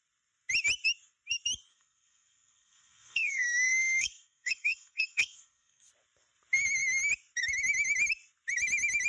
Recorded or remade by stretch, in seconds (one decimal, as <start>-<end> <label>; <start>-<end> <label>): 0.0-1.7 recorded; 1.7-5.9 remade; 5.9-9.1 recorded